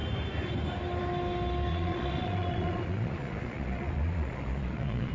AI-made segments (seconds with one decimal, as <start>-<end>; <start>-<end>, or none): 1.7-5.1